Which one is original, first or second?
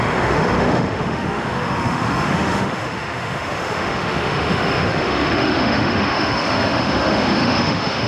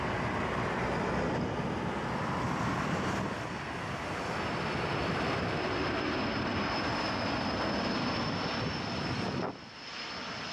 second